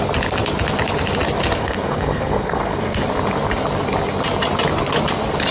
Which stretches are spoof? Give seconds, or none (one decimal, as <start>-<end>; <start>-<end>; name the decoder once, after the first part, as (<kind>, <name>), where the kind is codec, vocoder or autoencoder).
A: 1.6-3.0 (codec, SNAC)